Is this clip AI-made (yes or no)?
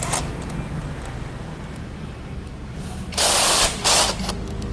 no